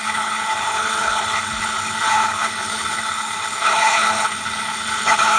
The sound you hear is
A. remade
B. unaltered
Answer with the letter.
A